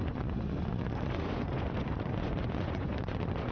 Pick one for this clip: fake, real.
fake